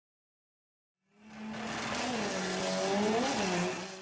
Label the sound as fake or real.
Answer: real